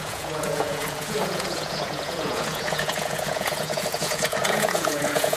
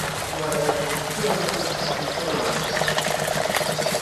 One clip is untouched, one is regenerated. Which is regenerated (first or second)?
first